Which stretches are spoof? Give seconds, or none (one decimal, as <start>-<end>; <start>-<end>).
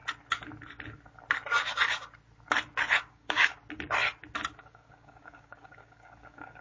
3.1-3.5; 4.6-6.6